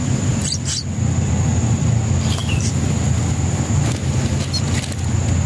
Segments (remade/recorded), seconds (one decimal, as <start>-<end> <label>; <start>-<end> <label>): 0.0-5.5 recorded